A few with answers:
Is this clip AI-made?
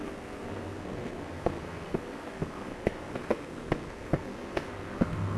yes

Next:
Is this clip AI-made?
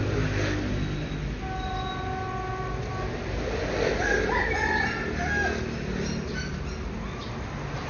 no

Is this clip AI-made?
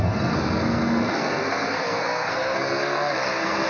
yes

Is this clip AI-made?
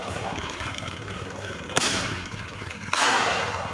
yes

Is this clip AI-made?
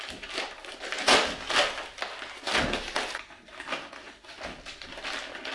no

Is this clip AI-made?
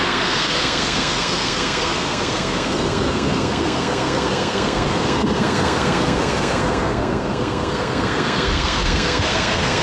yes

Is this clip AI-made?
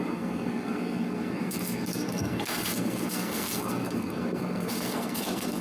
yes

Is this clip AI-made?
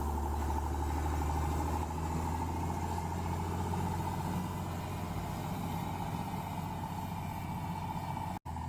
no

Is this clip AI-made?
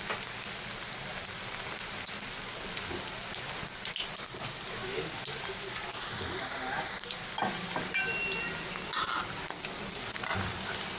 no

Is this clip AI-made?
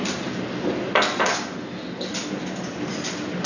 no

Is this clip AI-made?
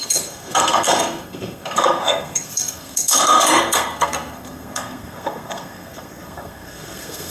yes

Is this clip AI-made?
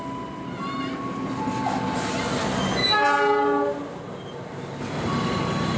no